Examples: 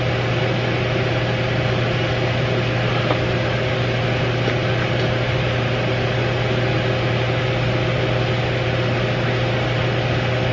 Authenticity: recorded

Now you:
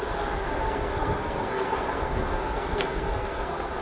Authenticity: remade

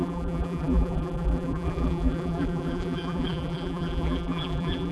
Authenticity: remade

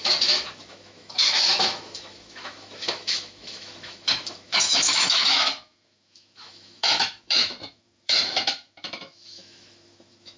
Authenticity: remade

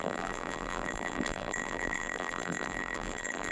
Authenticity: remade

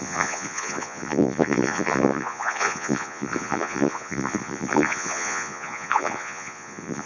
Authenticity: remade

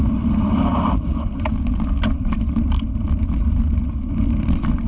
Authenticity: recorded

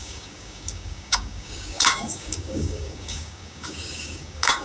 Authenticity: remade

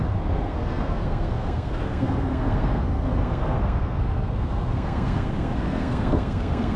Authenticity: remade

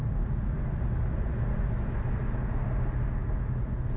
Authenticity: recorded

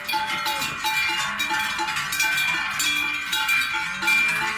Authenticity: recorded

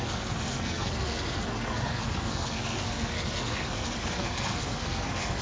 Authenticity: remade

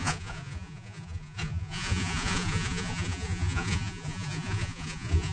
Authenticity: remade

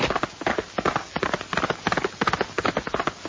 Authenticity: recorded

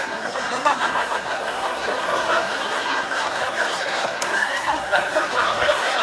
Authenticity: remade